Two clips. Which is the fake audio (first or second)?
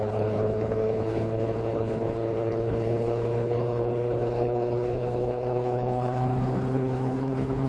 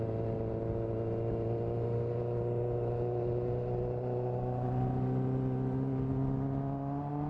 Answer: first